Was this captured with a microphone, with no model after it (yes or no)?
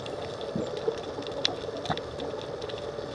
yes